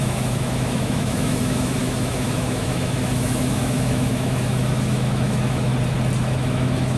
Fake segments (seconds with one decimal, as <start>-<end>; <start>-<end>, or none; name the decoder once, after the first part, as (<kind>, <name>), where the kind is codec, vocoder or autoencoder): 0.0-5.7 (autoencoder, DAC-VAE); 6.2-7.0